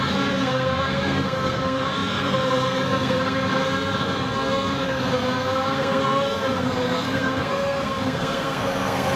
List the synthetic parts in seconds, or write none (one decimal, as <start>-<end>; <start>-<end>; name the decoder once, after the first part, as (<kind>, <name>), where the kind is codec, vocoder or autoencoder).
0.0-9.2 (codec, SNAC)